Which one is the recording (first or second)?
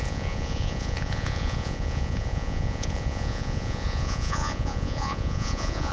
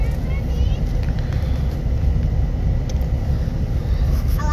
second